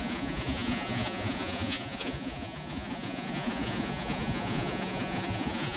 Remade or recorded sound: remade